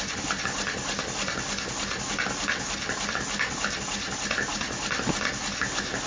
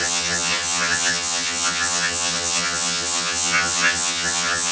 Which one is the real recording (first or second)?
first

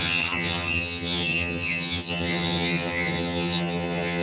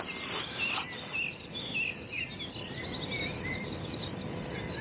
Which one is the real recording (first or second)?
second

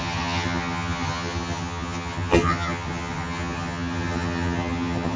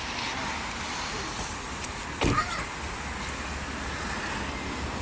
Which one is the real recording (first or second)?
second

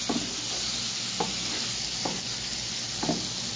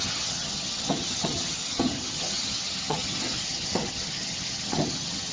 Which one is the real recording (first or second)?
first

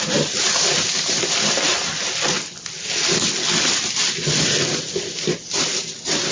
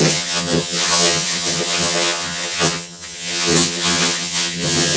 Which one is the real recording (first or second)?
first